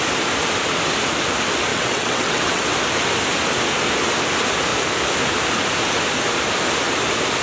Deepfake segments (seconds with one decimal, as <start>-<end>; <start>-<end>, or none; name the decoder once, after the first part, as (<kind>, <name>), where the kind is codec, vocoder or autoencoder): 1.7-2.6 (vocoder, WaveNeXt)